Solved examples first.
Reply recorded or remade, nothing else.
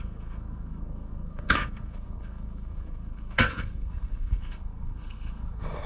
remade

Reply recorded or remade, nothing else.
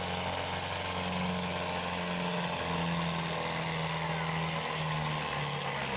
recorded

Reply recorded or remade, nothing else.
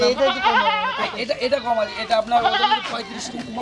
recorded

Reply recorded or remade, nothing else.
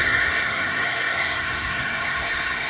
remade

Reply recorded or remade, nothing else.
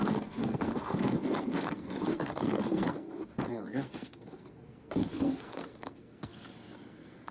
remade